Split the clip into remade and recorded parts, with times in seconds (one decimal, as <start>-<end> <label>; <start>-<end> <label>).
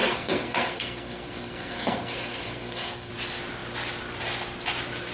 0.0-3.1 remade; 3.1-5.1 recorded